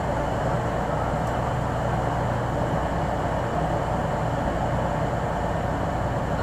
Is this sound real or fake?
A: real